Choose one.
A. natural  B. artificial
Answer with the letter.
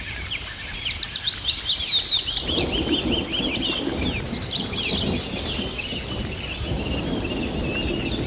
A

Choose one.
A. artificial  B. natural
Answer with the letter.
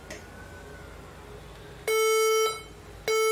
B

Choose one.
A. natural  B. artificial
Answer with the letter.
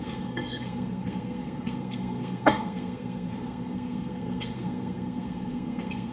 B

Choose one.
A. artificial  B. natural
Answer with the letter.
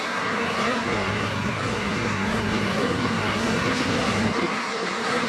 A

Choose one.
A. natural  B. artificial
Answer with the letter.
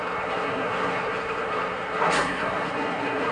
B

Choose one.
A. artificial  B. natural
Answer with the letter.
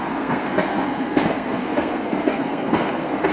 A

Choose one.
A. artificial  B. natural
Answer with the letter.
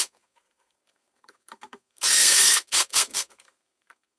A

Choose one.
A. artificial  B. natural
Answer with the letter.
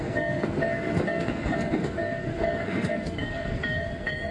A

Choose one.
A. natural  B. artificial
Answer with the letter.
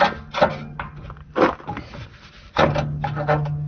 A